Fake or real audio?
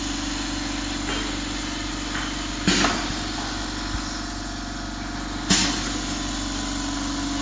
real